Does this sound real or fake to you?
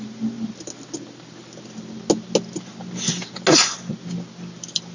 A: real